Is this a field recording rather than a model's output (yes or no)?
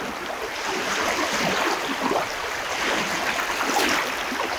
yes